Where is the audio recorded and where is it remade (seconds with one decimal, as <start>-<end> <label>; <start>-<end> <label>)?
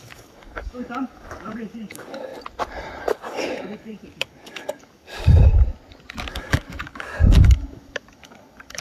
0.0-2.3 remade; 2.3-3.0 recorded; 3.0-5.5 remade; 5.5-6.3 recorded; 6.3-8.8 remade